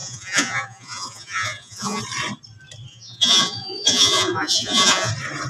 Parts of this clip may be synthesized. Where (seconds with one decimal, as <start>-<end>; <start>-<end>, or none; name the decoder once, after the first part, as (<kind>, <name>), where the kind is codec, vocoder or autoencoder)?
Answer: 0.0-2.0 (vocoder, Vocos); 2.9-5.1

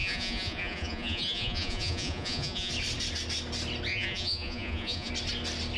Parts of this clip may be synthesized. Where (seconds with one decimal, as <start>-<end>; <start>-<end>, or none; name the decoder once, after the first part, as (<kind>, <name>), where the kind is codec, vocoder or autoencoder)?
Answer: 0.0-2.7 (vocoder, Vocos); 3.9-5.1

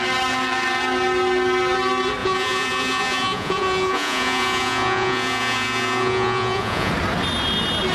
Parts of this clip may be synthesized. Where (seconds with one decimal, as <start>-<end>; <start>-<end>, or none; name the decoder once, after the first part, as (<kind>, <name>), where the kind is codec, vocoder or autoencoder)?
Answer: 2.2-6.9 (vocoder, Vocos)

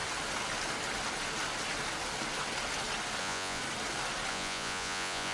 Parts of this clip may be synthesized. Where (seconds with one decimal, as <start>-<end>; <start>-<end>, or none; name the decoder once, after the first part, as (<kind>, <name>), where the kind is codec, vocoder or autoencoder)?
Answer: 3.2-3.6 (vocoder, Vocos); 4.3-5.3